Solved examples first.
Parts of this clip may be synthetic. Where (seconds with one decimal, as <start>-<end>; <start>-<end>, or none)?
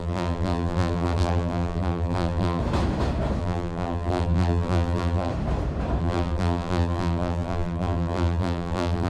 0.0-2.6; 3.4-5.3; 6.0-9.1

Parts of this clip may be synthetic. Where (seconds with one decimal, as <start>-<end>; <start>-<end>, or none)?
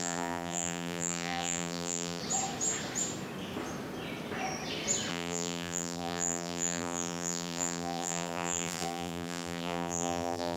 0.0-2.2; 5.1-10.6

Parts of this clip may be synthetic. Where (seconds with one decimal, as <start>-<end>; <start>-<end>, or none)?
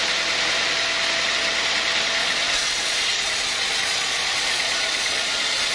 2.2-5.7